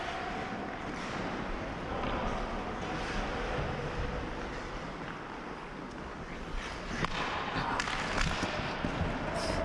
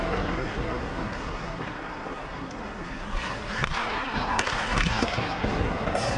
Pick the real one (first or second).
first